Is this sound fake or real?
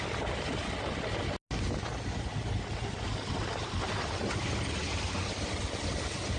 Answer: real